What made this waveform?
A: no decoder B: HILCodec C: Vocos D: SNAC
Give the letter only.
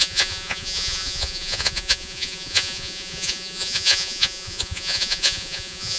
C